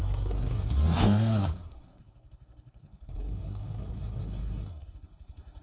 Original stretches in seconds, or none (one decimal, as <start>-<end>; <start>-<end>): none